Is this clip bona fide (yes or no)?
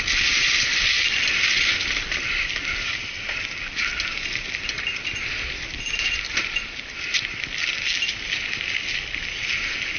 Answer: yes